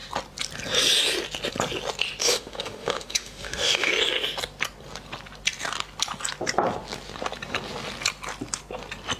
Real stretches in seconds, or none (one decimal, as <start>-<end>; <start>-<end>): 0.0-2.2; 3.9-9.2